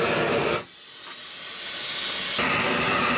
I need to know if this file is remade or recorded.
recorded